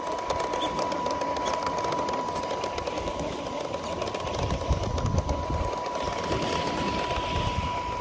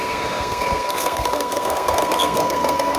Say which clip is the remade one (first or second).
second